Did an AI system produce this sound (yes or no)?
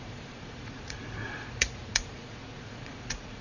yes